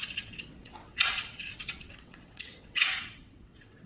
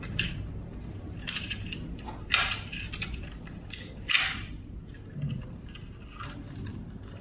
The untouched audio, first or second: second